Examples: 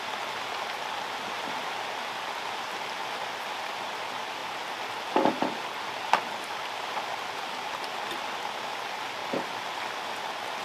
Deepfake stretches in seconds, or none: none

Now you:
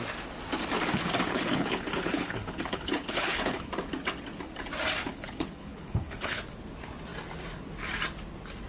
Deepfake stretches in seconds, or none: 1.3-3.7 (codec, HILCodec); 5.1-6.4

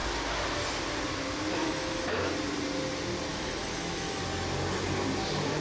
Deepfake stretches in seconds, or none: 1.6-2.1 (autoencoder, DAC-VAE); 3.3-4.2